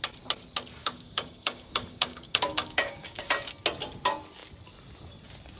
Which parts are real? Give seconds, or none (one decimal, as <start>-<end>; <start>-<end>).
0.0-0.8; 3.3-5.6